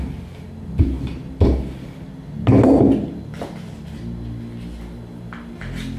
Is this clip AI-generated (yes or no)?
no